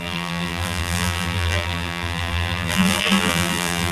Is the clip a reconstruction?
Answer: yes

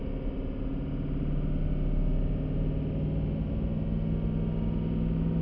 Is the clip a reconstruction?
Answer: no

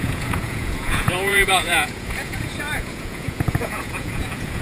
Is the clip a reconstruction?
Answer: yes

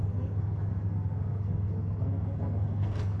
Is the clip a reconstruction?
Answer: yes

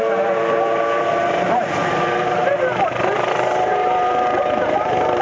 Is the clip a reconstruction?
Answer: yes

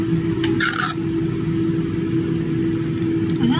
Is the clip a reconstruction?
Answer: no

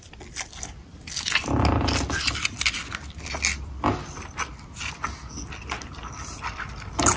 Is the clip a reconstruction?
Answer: no